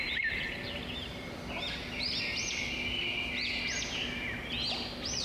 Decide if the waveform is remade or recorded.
recorded